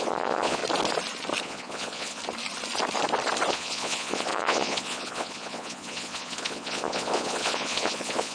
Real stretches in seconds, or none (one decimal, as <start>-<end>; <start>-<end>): 0.6-1.4; 2.2-3.5